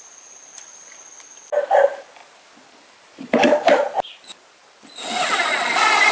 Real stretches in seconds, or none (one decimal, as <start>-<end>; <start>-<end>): 0.0-6.1